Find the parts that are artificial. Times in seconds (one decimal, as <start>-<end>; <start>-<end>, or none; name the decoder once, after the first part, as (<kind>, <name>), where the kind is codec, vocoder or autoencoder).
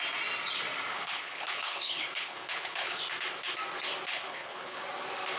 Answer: 0.9-3.0 (codec, HILCodec); 4.1-4.8